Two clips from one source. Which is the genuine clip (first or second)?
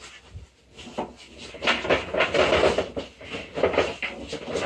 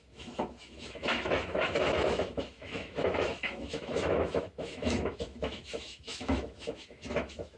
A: first